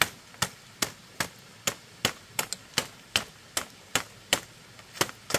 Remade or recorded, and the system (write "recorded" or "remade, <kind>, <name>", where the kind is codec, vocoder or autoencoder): recorded